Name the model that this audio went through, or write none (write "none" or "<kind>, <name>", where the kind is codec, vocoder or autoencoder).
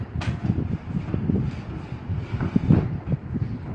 none